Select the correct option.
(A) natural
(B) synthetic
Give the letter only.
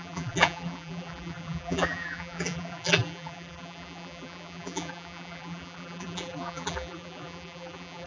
B